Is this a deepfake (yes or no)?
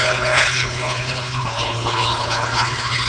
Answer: yes